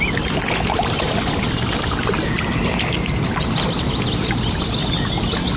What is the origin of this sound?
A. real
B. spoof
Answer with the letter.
A